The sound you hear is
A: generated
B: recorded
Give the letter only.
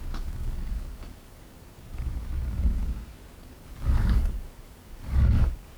A